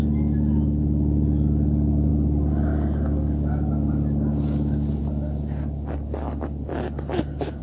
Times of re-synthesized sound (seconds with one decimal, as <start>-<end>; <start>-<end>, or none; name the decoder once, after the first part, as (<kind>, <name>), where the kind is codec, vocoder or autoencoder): none